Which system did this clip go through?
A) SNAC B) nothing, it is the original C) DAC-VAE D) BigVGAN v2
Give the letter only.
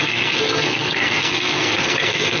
A